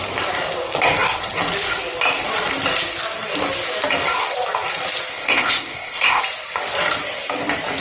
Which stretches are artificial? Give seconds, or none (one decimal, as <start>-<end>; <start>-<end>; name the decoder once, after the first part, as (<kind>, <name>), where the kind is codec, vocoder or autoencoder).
5.1-6.2 (codec, ZipCodec)